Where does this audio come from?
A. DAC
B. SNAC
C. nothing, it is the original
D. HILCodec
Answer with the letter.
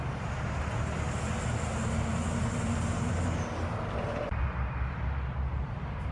C